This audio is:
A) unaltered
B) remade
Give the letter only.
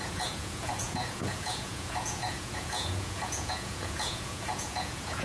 B